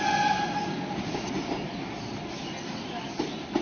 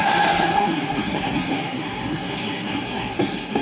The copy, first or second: second